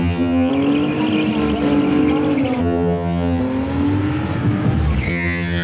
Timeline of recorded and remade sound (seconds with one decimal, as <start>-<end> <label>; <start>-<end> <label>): 0.0-0.5 remade; 0.5-2.6 recorded; 2.6-3.4 remade; 3.4-5.1 recorded; 5.1-5.6 remade